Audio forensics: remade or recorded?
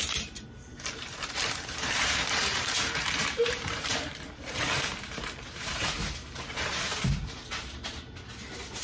remade